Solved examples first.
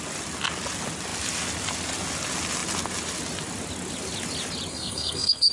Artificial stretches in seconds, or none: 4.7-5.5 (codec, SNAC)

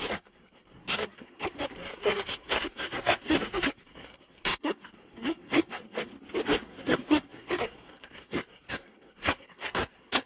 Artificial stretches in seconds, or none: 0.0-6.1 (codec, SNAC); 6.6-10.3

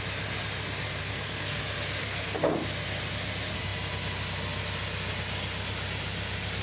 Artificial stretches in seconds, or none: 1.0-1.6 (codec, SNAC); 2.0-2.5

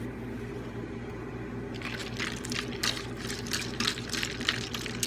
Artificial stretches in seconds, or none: none

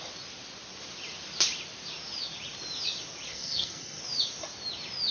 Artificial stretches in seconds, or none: 3.3-4.0 (codec, SNAC)

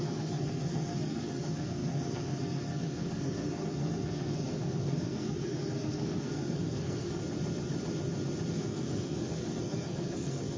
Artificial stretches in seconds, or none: 0.0-7.2 (codec, SNAC); 8.5-10.6

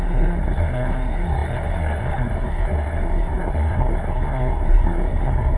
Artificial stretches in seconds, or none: 0.0-5.6 (codec, SNAC)